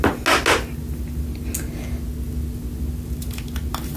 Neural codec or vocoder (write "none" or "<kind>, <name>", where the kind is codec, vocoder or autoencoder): none